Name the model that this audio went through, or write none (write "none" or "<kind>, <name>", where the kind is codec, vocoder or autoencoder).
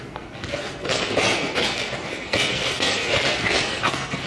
codec, SNAC